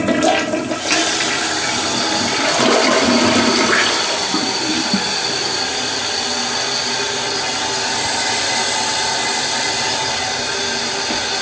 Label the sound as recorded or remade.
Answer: recorded